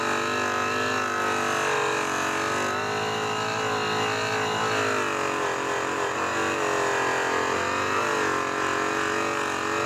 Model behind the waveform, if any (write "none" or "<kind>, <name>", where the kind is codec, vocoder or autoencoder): none